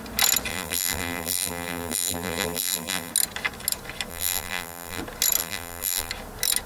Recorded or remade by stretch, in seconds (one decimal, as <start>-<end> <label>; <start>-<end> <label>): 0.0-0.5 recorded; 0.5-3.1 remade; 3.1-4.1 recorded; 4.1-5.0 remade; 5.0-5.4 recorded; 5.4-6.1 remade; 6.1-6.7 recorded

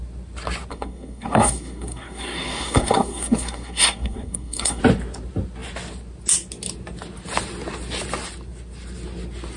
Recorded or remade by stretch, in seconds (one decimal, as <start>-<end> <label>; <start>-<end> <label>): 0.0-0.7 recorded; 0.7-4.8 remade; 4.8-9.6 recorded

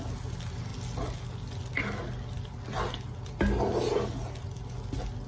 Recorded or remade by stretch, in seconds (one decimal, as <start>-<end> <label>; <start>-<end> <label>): 0.0-5.3 recorded

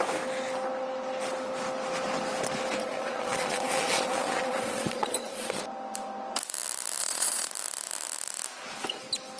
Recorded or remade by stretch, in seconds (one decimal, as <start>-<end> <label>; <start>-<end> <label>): 0.0-2.8 recorded; 2.8-5.6 remade; 5.6-7.0 recorded; 7.0-7.5 remade; 7.5-9.4 recorded

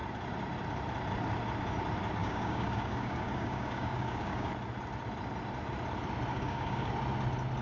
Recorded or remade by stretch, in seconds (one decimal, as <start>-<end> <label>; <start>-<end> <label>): 0.0-2.2 recorded; 2.2-4.5 remade; 4.5-6.3 recorded; 6.3-6.9 remade; 6.9-7.6 recorded